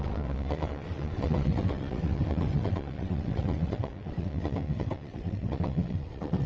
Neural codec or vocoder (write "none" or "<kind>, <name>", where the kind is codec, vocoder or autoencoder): vocoder, WaveNeXt